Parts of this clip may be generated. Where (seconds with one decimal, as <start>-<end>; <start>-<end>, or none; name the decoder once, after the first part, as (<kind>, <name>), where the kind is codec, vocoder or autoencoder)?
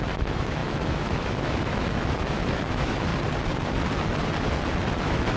0.0-3.1 (autoencoder, DAC-VAE); 5.0-5.4